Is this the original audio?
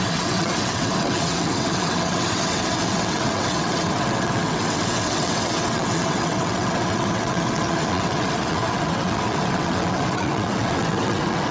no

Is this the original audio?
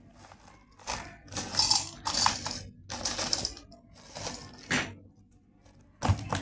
yes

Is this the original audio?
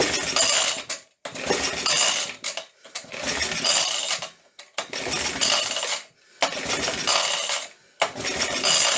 yes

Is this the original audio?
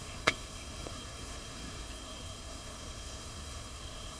no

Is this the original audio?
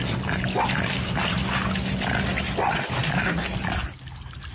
yes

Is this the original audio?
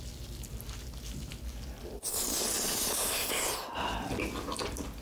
yes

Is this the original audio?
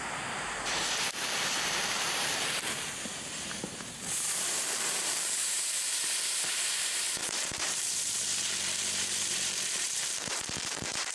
no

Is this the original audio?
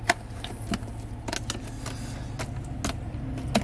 yes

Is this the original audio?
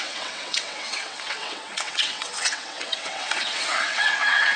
no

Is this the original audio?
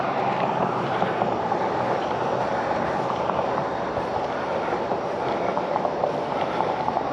no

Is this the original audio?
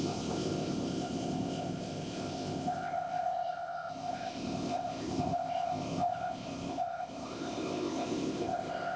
no